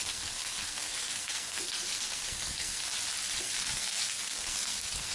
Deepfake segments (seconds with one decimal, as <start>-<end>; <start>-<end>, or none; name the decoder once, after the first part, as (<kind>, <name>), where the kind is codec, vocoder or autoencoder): 0.0-2.8 (codec, SNAC); 3.4-5.1